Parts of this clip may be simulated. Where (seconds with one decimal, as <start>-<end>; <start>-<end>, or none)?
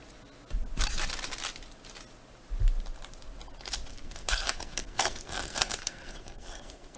3.9-7.0